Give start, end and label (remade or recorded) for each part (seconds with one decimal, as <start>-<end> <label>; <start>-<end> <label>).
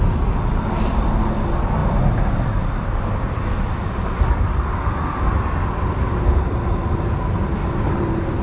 0.0-7.6 recorded; 7.6-8.4 remade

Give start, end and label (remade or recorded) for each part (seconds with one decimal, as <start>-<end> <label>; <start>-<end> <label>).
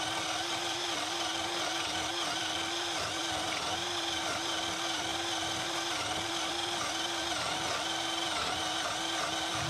0.0-9.7 remade